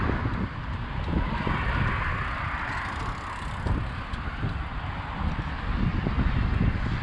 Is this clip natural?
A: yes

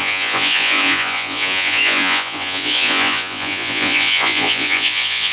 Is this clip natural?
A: no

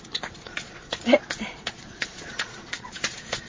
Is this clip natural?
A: no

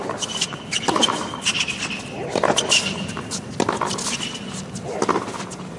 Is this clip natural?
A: yes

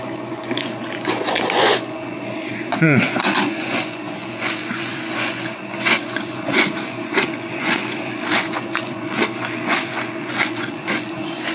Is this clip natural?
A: no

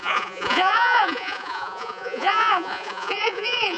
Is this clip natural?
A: no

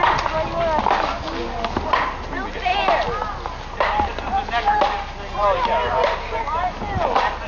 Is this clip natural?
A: yes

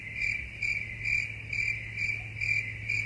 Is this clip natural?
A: yes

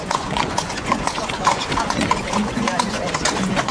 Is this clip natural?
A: no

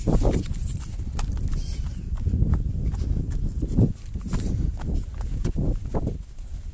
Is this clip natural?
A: yes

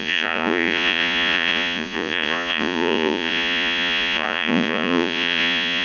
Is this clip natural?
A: no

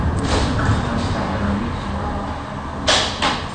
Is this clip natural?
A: yes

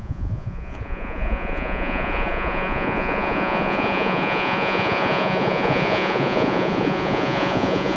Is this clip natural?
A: no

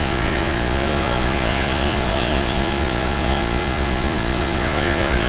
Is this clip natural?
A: no